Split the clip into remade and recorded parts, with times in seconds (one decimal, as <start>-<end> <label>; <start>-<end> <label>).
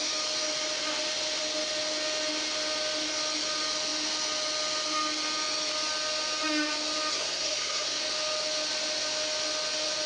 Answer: 0.0-7.1 recorded; 7.1-8.0 remade; 8.0-10.1 recorded